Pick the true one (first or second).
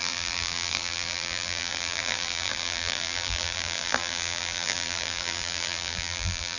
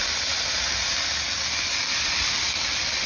second